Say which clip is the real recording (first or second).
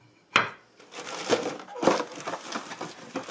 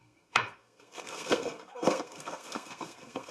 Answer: first